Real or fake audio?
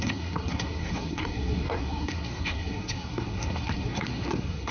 fake